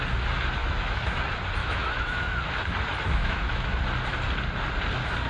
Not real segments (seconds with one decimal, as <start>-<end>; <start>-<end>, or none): 0.6-1.2; 1.6-2.3; 3.2-3.8